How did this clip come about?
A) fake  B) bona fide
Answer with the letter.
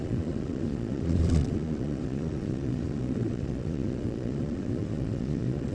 A